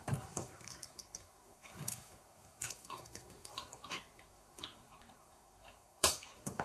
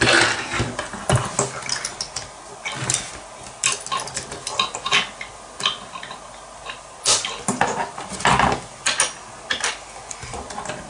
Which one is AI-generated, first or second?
first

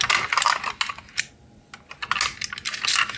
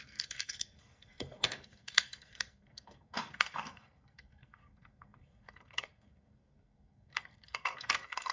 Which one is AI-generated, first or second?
second